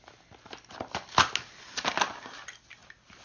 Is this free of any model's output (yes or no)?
yes